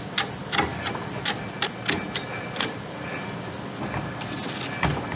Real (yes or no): yes